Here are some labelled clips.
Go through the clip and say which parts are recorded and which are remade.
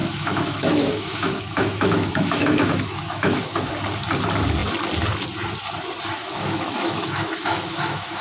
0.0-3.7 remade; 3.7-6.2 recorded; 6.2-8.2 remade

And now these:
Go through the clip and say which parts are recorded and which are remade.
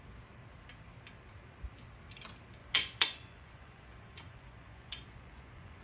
0.0-2.6 recorded; 2.6-5.8 remade